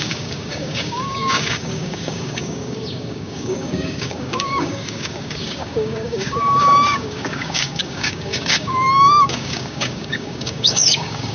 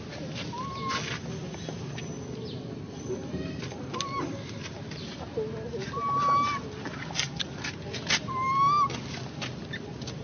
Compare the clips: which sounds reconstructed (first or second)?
first